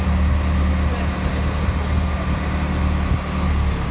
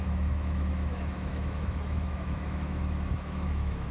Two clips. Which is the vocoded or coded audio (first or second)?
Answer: second